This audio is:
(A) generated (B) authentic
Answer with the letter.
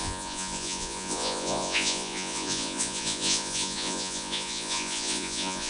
A